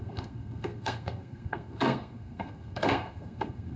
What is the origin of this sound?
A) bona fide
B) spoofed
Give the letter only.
B